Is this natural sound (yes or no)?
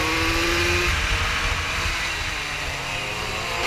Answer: yes